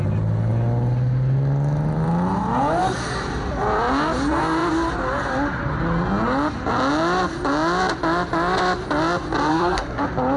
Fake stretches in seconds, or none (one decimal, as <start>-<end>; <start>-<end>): 9.5-10.0